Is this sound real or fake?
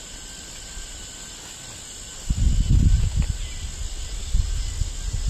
real